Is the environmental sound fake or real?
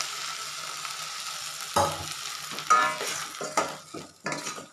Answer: real